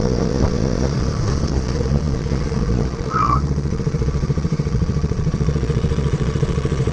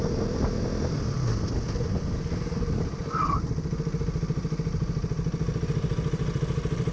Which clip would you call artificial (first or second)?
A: first